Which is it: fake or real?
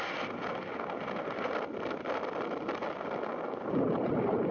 real